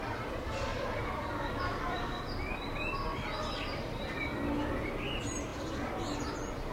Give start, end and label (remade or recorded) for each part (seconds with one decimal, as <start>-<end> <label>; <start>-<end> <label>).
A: 0.0-0.7 recorded; 0.7-4.4 remade; 4.4-5.5 recorded; 5.5-6.7 remade